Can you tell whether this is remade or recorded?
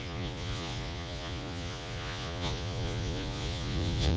remade